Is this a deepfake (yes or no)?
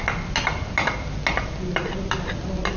no